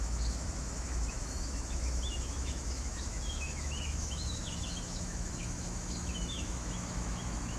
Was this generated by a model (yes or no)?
yes